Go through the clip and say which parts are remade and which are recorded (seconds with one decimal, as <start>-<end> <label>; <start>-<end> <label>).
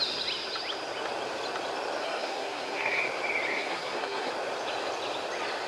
0.0-2.0 recorded; 2.0-3.0 remade; 3.0-3.5 recorded; 3.5-4.3 remade; 4.3-5.7 recorded